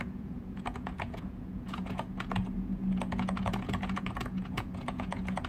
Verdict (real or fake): fake